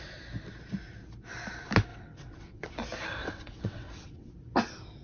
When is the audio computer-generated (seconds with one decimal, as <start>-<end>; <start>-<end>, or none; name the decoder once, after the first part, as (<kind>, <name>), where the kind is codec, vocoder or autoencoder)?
1.9-2.7 (vocoder, WaveNeXt); 3.2-4.3